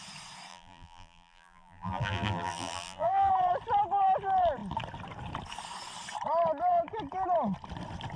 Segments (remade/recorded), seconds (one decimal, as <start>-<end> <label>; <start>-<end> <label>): 0.0-0.5 recorded; 0.5-3.3 remade; 3.3-8.2 recorded